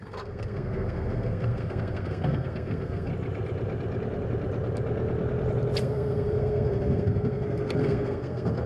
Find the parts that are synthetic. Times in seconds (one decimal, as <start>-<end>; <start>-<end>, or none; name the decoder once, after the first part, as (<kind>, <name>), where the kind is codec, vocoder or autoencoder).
0.0-3.1 (codec, SNAC); 5.8-8.7